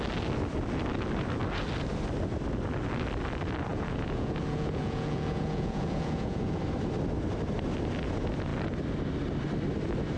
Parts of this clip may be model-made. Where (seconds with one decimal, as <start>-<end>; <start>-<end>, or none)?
3.7-6.6